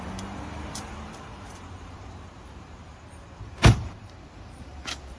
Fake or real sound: fake